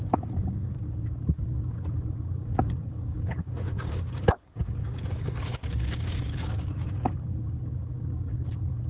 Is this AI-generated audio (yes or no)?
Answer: yes